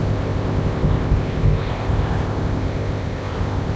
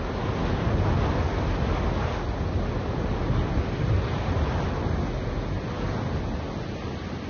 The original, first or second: second